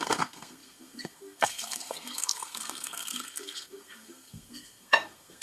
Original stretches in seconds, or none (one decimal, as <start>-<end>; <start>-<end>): none